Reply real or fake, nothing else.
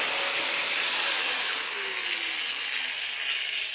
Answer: real